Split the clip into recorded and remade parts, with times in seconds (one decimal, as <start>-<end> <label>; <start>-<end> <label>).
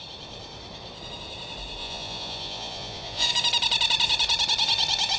0.0-1.8 recorded; 1.8-3.3 remade; 3.3-5.2 recorded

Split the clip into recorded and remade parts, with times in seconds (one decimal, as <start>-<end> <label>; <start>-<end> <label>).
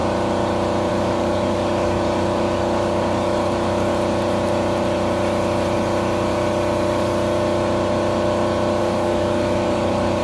0.0-0.9 recorded; 0.9-3.9 remade; 3.9-8.8 recorded; 8.8-10.2 remade